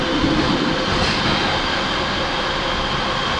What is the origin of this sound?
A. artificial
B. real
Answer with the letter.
B